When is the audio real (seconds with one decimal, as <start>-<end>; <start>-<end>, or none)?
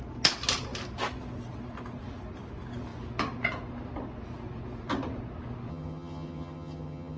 0.0-5.7